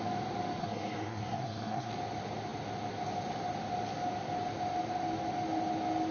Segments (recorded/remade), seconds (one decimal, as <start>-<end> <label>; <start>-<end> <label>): 0.0-0.6 recorded; 0.6-1.9 remade; 1.9-6.1 recorded